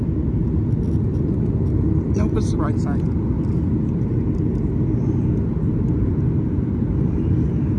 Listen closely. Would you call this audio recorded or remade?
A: recorded